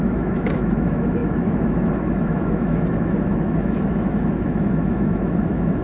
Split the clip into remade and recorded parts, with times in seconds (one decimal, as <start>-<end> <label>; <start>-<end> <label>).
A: 0.0-5.8 remade